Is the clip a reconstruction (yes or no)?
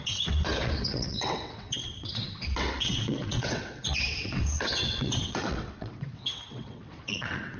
yes